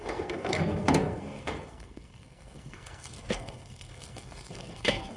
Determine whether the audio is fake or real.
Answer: fake